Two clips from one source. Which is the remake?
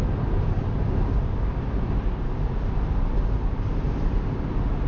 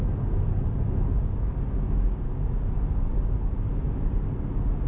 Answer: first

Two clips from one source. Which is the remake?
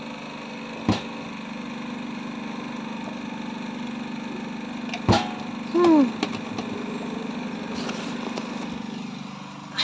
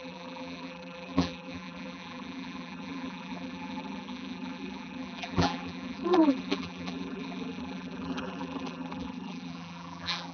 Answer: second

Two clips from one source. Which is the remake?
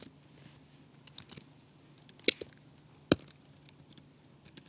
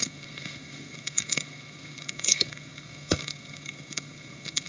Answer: second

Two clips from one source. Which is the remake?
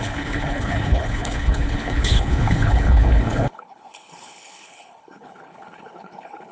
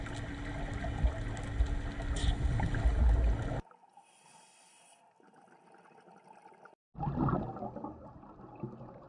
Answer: first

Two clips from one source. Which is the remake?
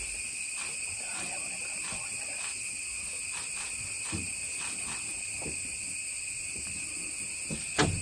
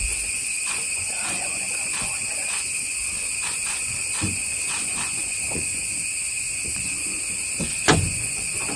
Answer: second